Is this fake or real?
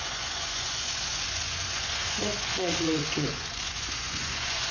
fake